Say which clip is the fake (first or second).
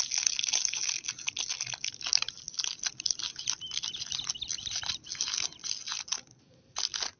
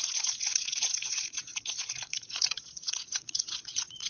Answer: second